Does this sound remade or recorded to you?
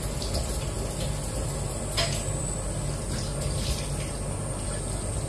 recorded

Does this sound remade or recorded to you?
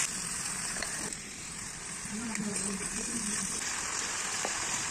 remade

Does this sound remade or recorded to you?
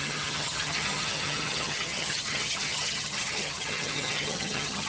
remade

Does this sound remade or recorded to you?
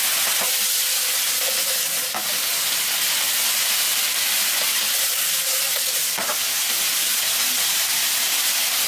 recorded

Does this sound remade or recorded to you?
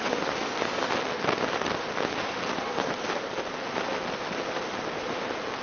recorded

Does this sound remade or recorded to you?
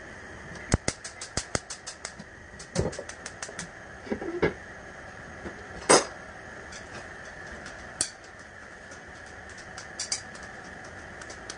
recorded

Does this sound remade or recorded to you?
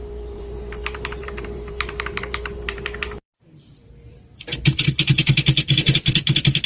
remade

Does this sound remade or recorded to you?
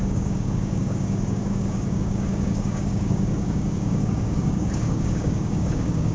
remade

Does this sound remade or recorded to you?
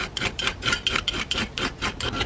recorded